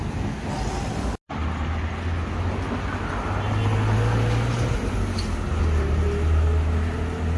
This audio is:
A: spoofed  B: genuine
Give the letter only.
B